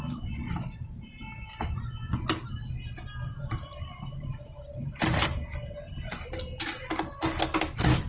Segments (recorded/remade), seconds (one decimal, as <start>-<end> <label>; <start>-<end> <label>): 0.0-8.1 recorded